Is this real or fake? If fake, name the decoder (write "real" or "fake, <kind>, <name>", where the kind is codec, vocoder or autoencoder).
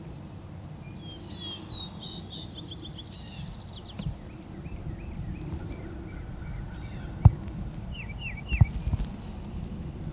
real